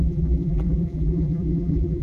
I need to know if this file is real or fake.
fake